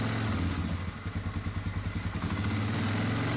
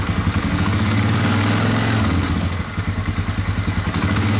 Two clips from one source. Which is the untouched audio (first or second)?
first